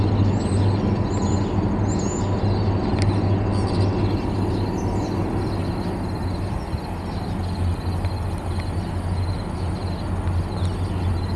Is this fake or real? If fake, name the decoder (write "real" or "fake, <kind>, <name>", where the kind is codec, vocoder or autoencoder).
real